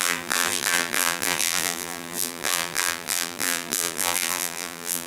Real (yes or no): no